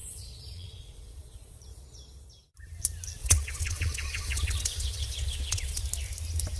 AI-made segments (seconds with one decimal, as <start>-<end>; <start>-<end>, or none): 0.0-2.3; 3.2-5.8